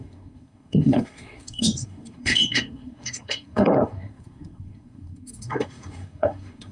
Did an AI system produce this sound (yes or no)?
yes